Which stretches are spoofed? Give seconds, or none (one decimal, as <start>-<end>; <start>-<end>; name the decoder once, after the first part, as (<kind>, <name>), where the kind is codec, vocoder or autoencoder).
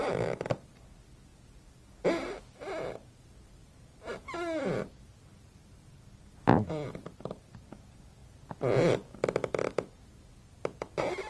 none